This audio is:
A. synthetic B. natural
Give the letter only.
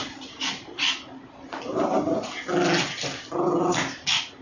B